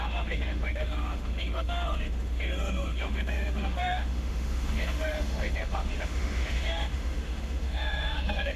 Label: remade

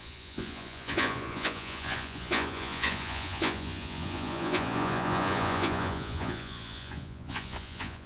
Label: remade